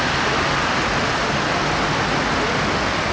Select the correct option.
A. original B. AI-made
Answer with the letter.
A